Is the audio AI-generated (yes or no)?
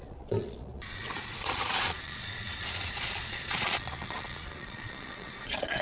yes